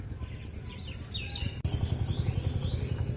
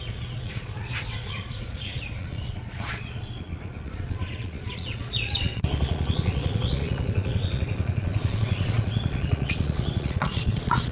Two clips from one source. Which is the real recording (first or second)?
first